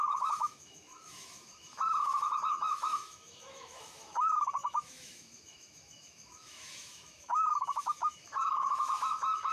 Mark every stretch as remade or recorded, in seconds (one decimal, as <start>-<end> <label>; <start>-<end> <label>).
0.0-9.5 remade